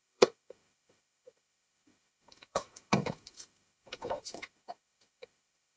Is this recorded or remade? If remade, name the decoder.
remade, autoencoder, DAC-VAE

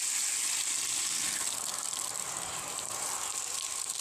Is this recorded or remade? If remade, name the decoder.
recorded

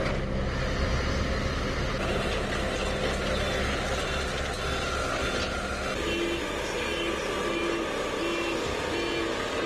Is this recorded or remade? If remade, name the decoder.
recorded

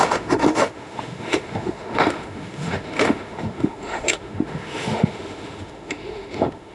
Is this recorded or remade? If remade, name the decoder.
remade, autoencoder, DAC-VAE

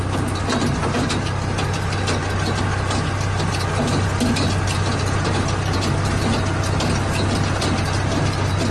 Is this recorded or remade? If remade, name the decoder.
recorded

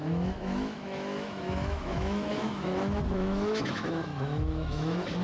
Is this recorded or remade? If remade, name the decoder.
remade, autoencoder, DAC-VAE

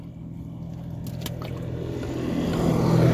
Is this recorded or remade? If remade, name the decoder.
recorded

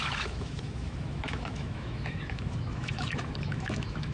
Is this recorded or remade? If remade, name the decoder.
remade, autoencoder, DAC-VAE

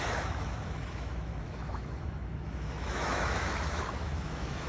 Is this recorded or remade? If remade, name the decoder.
remade, autoencoder, DAC-VAE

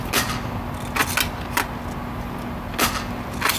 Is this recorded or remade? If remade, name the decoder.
recorded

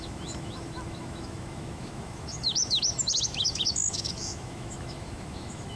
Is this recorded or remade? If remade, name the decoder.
remade, autoencoder, DAC-VAE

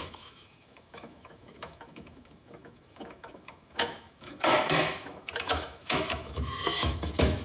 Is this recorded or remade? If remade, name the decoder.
remade, autoencoder, DAC-VAE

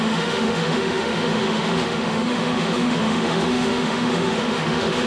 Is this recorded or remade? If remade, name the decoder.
remade, autoencoder, DAC-VAE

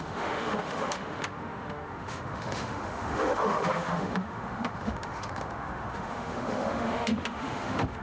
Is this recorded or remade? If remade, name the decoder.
remade, autoencoder, DAC-VAE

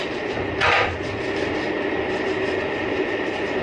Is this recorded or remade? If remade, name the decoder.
recorded